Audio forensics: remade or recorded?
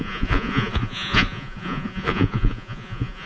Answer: remade